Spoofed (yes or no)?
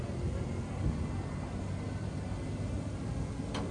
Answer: no